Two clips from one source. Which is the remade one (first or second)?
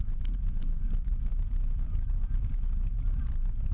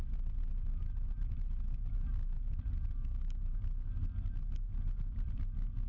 first